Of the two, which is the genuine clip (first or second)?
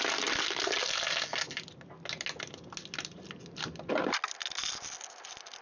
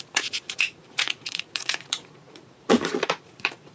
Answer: first